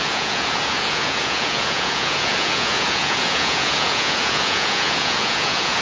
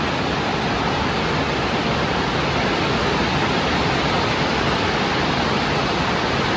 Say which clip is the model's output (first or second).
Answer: first